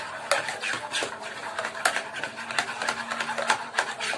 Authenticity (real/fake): real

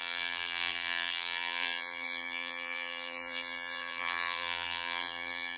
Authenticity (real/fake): fake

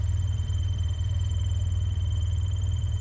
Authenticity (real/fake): fake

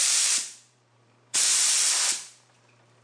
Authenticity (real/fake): fake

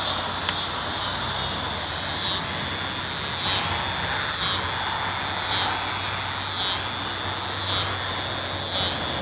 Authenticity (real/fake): real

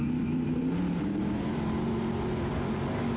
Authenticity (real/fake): fake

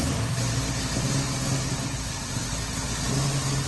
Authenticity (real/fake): real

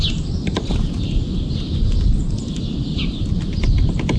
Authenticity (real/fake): real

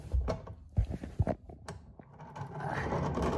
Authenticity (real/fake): real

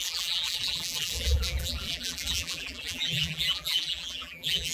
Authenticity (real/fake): fake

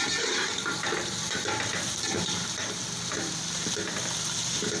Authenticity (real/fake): fake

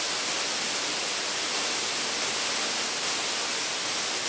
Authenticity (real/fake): real